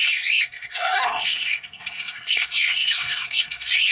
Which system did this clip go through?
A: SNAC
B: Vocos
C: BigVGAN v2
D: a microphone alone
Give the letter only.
A